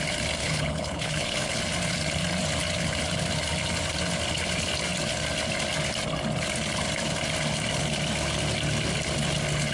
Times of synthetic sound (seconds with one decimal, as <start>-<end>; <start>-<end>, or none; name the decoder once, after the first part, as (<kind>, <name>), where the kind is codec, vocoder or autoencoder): 0.4-1.6 (codec, HILCodec)